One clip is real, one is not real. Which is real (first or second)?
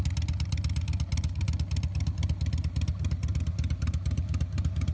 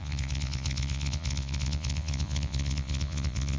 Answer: first